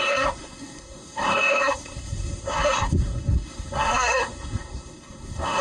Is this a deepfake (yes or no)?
yes